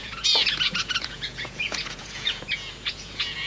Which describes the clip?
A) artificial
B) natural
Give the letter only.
A